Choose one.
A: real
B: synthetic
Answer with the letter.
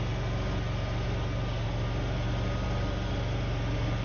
A